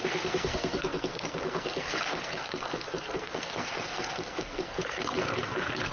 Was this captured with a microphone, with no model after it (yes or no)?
no